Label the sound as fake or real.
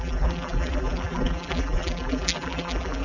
fake